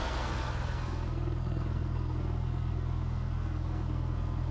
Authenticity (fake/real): fake